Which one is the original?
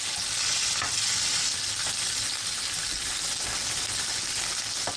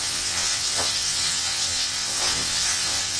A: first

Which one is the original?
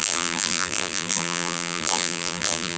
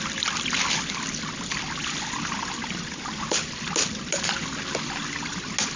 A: second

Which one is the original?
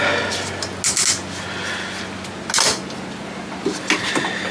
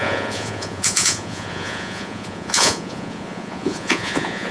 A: first